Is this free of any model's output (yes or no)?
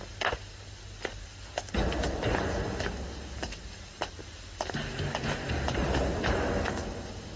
yes